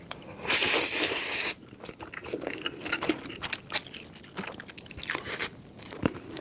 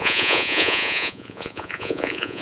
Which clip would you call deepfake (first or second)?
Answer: second